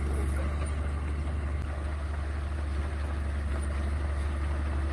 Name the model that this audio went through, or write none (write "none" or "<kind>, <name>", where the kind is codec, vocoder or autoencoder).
none